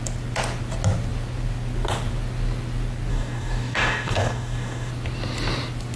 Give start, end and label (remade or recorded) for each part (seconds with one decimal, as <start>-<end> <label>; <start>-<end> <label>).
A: 0.0-3.1 recorded; 3.1-4.9 remade; 4.9-6.0 recorded

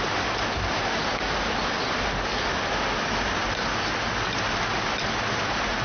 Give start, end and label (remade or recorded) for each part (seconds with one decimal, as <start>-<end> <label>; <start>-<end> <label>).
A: 0.0-5.8 recorded

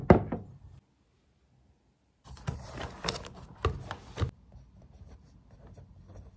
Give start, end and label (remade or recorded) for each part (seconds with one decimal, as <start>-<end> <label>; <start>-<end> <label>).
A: 0.0-6.4 recorded

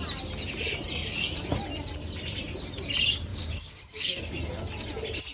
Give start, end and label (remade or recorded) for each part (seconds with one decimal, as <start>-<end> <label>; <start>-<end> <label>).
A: 0.0-3.3 recorded; 3.3-4.2 remade; 4.2-5.3 recorded